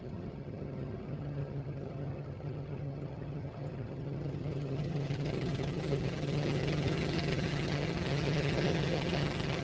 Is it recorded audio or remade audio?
remade